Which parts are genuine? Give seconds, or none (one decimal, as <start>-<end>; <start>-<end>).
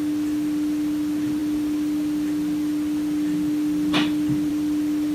0.0-5.1